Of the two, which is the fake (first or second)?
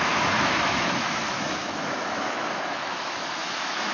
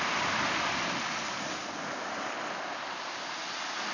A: first